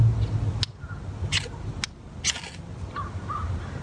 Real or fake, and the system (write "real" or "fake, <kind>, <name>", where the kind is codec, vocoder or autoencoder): real